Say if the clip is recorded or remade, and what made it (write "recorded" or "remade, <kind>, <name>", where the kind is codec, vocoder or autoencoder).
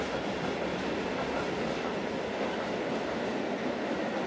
recorded